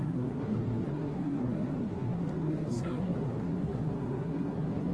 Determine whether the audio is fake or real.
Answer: fake